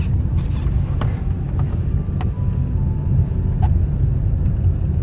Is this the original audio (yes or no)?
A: yes